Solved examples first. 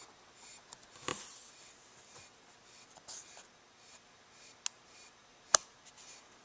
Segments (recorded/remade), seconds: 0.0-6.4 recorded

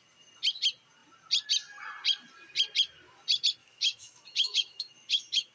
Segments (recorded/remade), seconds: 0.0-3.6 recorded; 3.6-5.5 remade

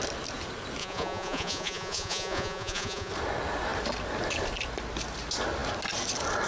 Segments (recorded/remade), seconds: 0.0-0.8 recorded; 0.8-3.1 remade; 3.1-6.5 recorded

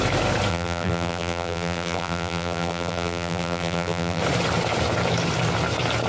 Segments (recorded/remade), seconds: 0.0-0.5 recorded; 0.5-4.2 remade; 4.2-6.1 recorded

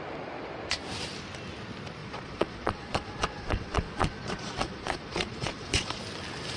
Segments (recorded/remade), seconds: 0.0-2.0 recorded; 2.0-6.0 remade; 6.0-6.6 recorded

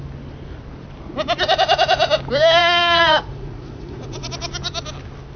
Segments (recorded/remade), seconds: 0.0-2.6 recorded; 2.6-4.3 remade; 4.3-5.4 recorded

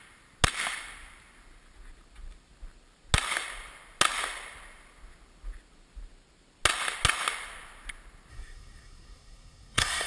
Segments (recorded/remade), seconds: 0.0-8.3 recorded; 8.3-10.1 remade

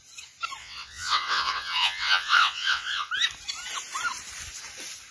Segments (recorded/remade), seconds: 0.0-0.6 recorded; 0.6-3.1 remade; 3.1-5.1 recorded